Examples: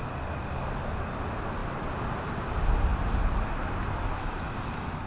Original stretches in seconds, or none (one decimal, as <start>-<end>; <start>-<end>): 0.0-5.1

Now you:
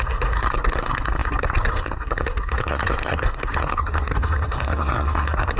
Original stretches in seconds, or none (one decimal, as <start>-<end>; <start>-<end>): none

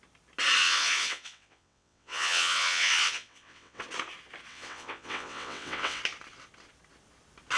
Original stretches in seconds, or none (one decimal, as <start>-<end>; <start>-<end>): 0.0-0.6; 3.8-4.5; 6.0-7.6